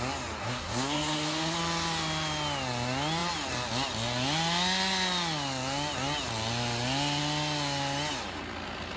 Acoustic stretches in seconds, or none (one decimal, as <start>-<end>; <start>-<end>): 0.0-0.4; 1.6-9.0